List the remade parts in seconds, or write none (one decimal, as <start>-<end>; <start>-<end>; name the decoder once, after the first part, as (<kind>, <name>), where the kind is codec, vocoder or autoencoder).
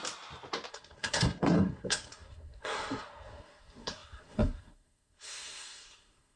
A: 0.7-6.4 (codec, SNAC)